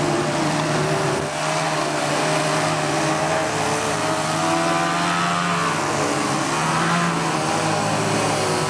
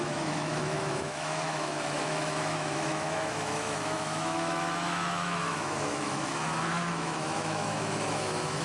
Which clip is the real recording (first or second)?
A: first